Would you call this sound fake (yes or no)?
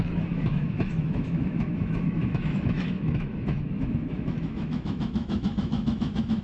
yes